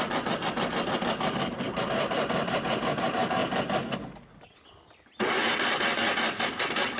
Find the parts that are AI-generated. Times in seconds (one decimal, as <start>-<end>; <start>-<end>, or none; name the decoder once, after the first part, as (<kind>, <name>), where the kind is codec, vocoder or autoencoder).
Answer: none